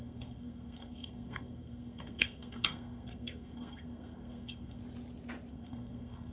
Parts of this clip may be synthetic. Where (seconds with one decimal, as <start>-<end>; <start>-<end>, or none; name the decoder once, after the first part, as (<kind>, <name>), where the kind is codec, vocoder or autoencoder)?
0.0-4.8 (codec, SNAC); 5.5-6.3